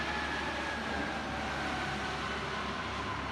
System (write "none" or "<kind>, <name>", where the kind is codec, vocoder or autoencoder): none